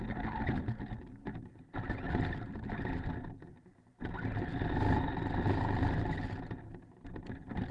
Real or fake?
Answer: real